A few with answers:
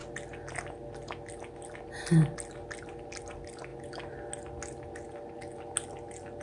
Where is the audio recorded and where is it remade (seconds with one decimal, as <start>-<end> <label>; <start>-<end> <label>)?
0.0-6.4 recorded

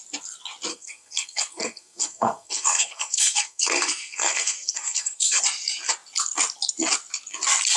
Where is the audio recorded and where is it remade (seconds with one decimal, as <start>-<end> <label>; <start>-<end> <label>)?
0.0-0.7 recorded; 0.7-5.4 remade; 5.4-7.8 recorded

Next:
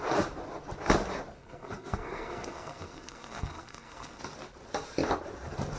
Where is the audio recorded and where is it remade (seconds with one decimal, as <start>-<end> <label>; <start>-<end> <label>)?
0.0-1.4 recorded; 1.4-4.2 remade; 4.2-5.8 recorded

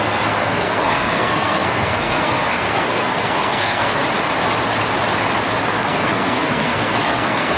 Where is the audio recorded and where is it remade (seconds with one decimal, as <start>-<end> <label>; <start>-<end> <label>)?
0.0-4.0 remade; 4.0-5.6 recorded; 5.6-7.6 remade

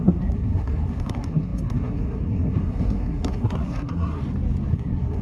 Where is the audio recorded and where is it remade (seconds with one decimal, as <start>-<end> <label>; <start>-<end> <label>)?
0.0-4.2 remade; 4.2-4.7 recorded; 4.7-5.2 remade